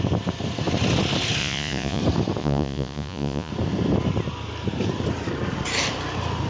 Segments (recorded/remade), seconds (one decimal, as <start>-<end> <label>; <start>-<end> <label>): 0.0-1.4 recorded; 1.4-2.0 remade; 2.0-2.4 recorded; 2.4-3.5 remade; 3.5-6.5 recorded